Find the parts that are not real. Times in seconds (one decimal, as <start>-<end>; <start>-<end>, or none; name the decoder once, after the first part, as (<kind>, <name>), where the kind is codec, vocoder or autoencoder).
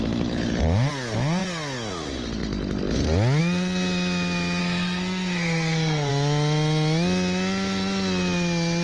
4.6-6.1 (codec, SNAC)